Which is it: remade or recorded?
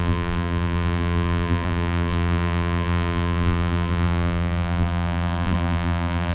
remade